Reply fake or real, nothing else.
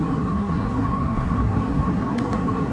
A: fake